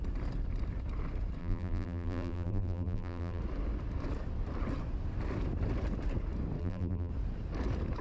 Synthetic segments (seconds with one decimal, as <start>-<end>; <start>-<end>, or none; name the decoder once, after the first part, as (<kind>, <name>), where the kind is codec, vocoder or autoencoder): 1.4-3.4 (vocoder, BigVGAN v2); 6.6-7.1